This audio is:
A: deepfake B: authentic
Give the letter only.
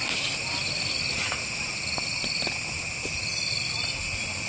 B